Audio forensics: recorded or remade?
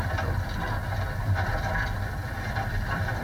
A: remade